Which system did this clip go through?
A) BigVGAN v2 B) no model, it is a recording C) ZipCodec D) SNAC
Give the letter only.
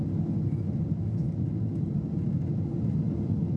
B